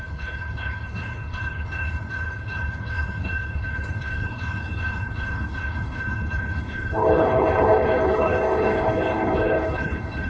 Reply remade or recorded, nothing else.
remade